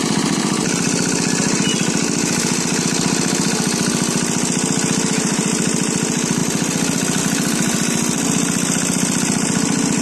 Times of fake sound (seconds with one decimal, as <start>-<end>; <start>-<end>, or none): none